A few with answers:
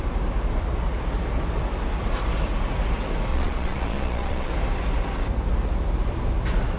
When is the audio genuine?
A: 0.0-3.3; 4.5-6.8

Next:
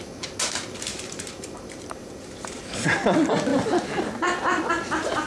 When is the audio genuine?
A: 0.0-0.9; 2.6-5.3